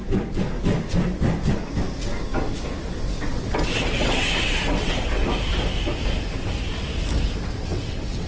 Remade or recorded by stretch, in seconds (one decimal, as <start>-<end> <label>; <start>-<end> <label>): 0.0-3.0 recorded; 3.0-5.2 remade; 5.2-7.4 recorded; 7.4-8.3 remade